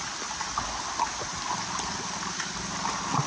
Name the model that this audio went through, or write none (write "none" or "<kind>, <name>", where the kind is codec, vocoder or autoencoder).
none